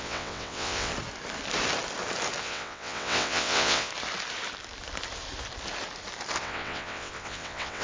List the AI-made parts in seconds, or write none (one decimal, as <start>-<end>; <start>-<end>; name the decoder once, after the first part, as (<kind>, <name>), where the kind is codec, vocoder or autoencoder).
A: 0.0-0.9 (vocoder, WaveNeXt); 2.4-3.9; 6.4-7.8